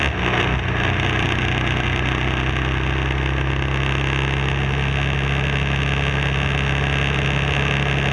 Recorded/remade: recorded